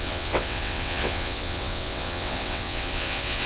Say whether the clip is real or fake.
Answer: fake